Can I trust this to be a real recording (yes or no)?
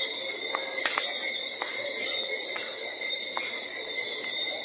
yes